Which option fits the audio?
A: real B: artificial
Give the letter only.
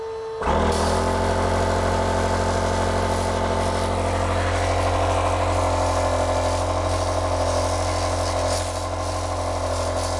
A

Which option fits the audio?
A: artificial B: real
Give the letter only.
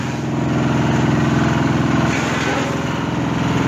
B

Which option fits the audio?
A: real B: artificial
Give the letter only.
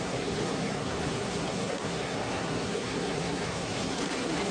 B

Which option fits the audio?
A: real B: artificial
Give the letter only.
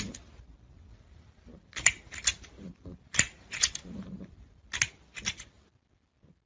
A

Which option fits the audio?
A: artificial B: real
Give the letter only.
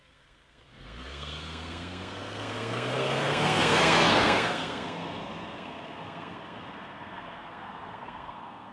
A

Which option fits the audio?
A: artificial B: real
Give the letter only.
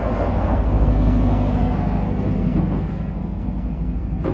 A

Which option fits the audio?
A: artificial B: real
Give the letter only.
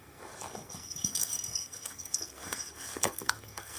A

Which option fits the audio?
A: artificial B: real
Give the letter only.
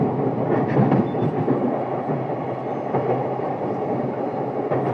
B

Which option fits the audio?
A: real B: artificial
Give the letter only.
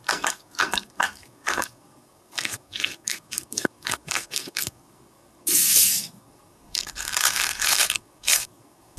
B